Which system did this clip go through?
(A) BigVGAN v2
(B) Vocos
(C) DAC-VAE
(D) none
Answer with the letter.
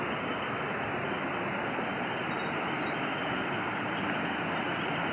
D